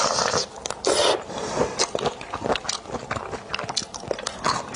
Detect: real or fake real